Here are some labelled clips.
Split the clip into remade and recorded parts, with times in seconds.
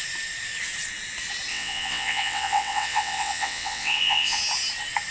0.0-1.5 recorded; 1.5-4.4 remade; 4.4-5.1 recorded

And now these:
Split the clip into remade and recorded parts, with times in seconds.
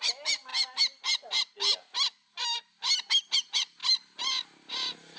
0.0-5.2 recorded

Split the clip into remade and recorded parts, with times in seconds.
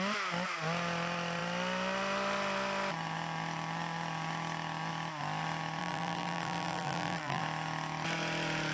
0.0-5.8 recorded; 5.8-7.4 remade; 7.4-8.7 recorded